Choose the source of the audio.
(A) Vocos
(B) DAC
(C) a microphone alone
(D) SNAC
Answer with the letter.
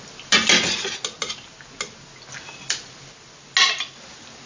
C